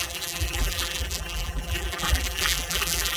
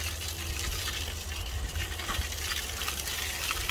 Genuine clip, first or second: second